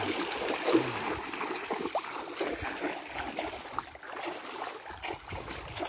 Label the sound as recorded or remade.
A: recorded